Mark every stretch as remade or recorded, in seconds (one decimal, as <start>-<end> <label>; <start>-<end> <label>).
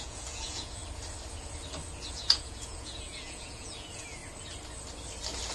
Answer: 0.0-0.8 remade; 0.8-2.1 recorded; 2.1-4.2 remade; 4.2-5.5 recorded